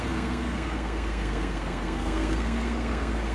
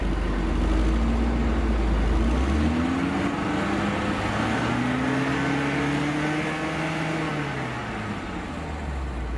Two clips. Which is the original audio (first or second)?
second